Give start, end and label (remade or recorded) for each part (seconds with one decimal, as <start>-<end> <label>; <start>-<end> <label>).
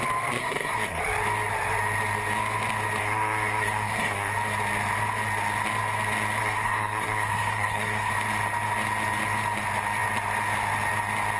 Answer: 0.0-0.4 recorded; 0.4-1.0 remade; 1.0-3.0 recorded; 3.0-4.3 remade; 4.3-6.4 recorded; 6.4-8.1 remade; 8.1-11.4 recorded